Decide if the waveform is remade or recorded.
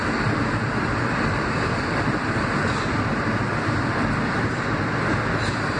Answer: recorded